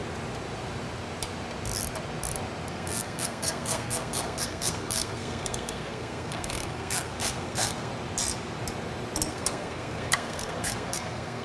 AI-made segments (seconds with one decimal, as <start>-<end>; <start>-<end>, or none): 2.7-7.9; 9.3-11.4